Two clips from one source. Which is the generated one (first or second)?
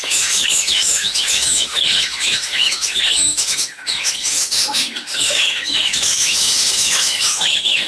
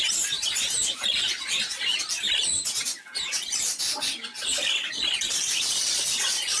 first